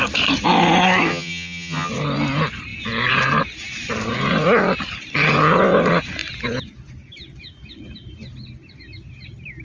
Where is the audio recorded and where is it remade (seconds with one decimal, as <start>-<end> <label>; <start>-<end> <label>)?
0.0-1.1 recorded; 1.1-1.9 remade; 1.9-9.6 recorded